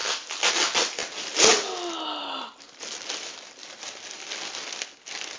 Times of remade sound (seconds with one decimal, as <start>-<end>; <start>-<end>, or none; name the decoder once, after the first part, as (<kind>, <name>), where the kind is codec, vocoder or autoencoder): none